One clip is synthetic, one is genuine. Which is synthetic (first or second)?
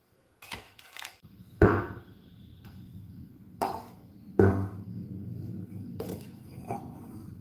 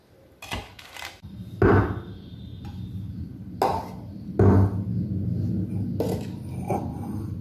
first